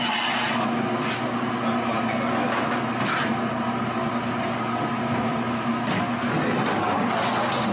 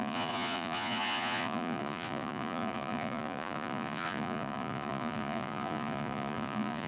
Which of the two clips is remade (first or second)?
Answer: second